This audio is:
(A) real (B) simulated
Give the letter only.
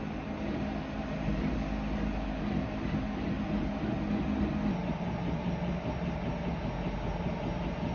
A